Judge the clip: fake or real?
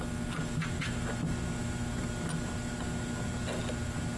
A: real